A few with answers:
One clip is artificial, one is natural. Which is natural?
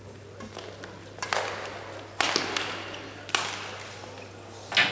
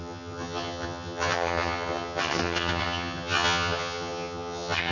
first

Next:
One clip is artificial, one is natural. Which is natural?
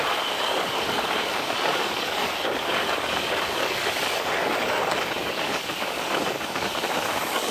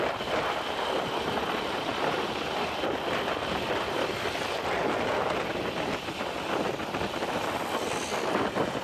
second